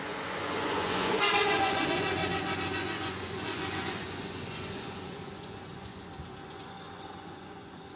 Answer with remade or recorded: remade